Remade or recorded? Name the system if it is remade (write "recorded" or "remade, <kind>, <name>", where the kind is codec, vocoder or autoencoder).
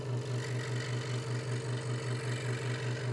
recorded